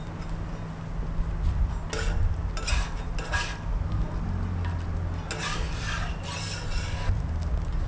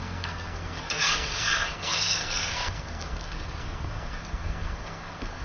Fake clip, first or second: second